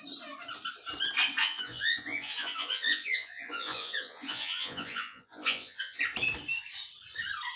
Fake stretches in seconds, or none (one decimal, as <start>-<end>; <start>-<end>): 1.4-6.0